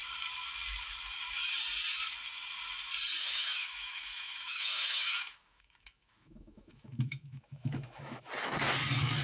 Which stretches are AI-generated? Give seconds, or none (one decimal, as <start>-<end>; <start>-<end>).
3.2-8.3